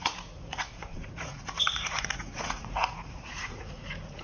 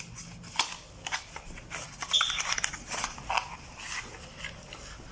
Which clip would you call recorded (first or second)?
second